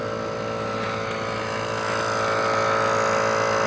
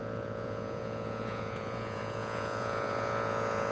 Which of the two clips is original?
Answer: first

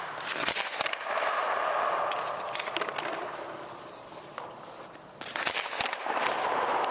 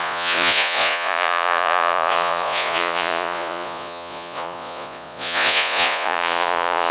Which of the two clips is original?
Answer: first